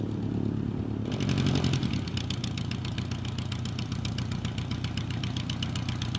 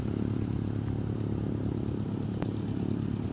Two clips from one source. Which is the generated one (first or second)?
second